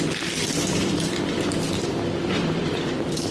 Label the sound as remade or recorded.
remade